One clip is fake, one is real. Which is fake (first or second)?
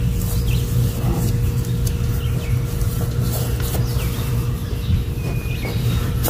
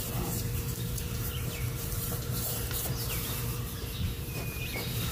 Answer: second